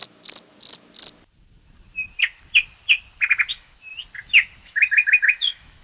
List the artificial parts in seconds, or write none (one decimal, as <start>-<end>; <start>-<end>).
3.5-3.9; 4.6-5.8